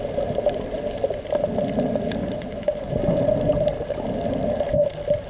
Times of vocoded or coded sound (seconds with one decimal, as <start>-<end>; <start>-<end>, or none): 2.2-3.0